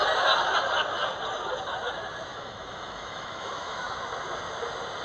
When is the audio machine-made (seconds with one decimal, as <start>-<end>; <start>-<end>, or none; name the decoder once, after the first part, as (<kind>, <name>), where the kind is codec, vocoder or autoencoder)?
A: 2.3-4.0 (autoencoder, DAC-VAE)